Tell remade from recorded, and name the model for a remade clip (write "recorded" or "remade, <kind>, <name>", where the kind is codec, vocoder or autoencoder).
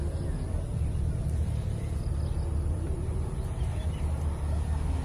recorded